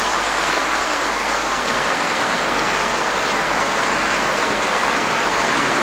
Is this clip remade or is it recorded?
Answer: remade